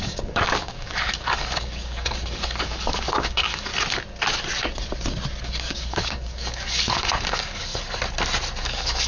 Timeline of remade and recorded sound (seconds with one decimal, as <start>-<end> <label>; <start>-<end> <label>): 0.0-3.7 remade; 3.7-5.4 recorded; 5.4-7.7 remade; 7.7-8.6 recorded; 8.6-9.1 remade